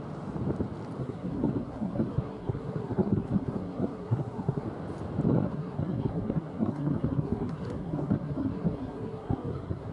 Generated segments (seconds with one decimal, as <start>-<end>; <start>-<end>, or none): 1.0-4.7; 5.3-9.9